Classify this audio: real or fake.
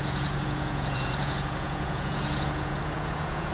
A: fake